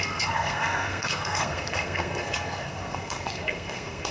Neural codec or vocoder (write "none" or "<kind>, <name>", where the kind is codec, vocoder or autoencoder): codec, SNAC